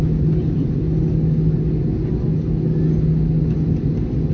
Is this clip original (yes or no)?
yes